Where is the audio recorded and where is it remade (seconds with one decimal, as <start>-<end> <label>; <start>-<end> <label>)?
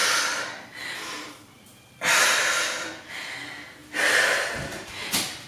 0.0-5.5 recorded